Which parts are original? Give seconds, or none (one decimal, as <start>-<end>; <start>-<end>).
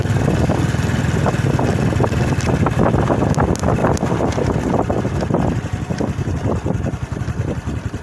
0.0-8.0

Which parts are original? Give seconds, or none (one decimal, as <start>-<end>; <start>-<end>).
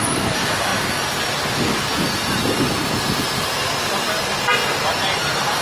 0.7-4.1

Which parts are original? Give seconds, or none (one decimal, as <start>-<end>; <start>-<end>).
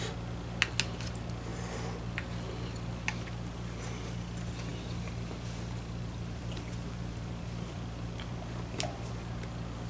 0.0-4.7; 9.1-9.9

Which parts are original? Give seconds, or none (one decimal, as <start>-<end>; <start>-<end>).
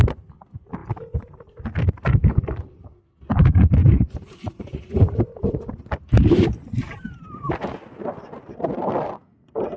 0.0-3.8; 8.3-9.8